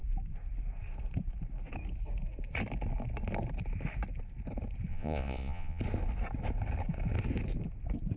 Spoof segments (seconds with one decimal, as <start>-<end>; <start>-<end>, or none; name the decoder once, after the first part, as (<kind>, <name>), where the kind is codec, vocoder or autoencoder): 4.9-5.8 (vocoder, Vocos)